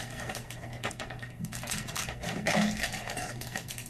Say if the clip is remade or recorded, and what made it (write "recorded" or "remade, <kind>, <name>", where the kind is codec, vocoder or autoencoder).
remade, codec, SNAC